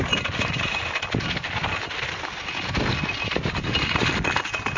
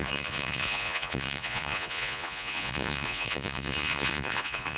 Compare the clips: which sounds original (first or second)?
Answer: first